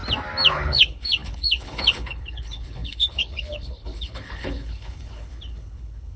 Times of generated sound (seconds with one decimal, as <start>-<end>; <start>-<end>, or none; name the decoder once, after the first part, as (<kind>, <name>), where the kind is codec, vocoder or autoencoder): 0.5-6.2 (codec, HILCodec)